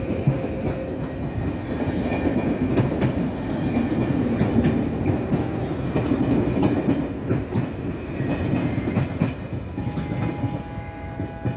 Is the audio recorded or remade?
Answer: recorded